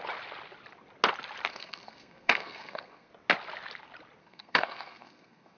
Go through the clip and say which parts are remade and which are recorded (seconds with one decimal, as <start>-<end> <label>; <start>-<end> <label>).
0.0-1.5 recorded; 1.5-3.1 remade; 3.1-4.2 recorded; 4.2-5.6 remade